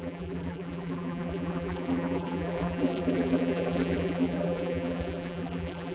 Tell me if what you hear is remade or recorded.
remade